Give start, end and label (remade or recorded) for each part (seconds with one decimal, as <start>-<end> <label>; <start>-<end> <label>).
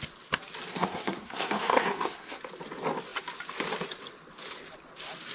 0.0-0.7 recorded; 0.7-2.4 remade; 2.4-5.3 recorded